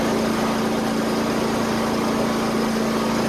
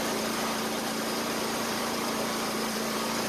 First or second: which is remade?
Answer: second